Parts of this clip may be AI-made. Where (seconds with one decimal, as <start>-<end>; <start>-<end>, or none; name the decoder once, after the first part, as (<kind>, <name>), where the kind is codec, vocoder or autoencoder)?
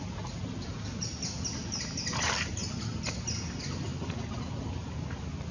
none